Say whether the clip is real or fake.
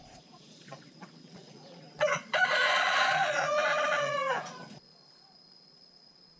fake